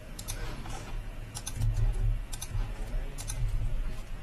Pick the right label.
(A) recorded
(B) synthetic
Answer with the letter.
B